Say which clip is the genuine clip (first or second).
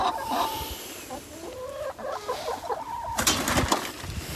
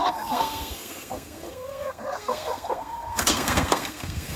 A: first